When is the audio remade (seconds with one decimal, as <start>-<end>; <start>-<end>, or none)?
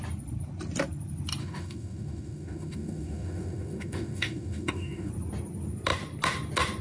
1.4-5.1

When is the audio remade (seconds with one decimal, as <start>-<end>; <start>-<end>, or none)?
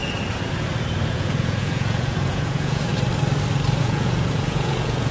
1.1-2.9; 3.8-5.1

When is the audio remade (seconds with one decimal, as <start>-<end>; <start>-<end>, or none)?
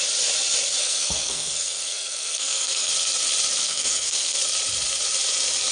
0.8-2.9; 3.6-4.4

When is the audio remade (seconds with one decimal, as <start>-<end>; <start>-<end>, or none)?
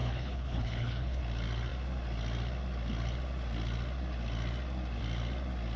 0.0-1.2